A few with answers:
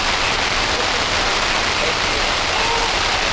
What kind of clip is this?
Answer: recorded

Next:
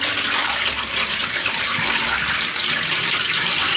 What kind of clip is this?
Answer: remade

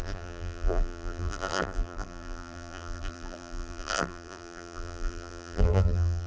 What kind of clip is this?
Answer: remade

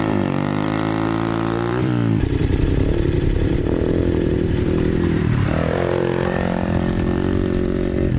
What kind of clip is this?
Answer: remade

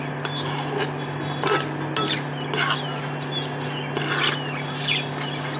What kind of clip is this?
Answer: recorded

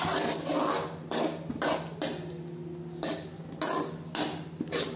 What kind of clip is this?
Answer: recorded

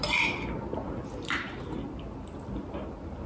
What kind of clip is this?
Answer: recorded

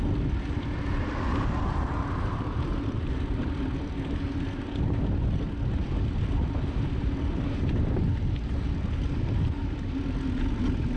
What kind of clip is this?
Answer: recorded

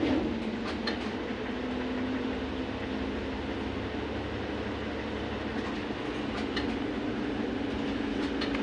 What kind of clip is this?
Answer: recorded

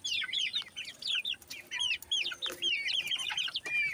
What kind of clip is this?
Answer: recorded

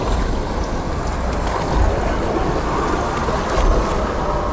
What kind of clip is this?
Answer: recorded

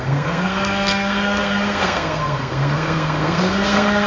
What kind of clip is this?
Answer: remade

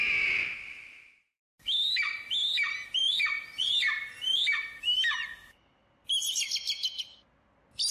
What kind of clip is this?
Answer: recorded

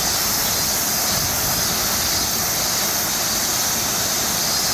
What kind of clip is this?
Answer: recorded